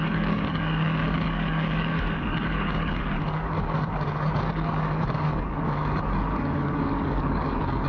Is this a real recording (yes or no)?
no